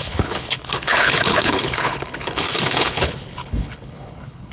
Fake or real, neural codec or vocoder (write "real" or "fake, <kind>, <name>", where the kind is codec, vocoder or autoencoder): fake, codec, HILCodec